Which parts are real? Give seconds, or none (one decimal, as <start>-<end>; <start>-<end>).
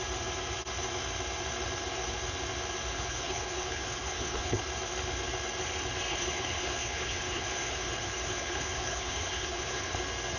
0.0-2.9; 4.6-6.1; 10.0-10.4